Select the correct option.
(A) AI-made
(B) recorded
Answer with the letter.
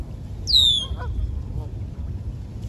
B